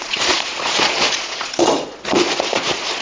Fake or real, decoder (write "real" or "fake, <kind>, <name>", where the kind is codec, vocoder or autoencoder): fake, vocoder, Vocos